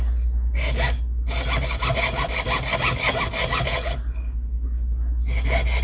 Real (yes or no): yes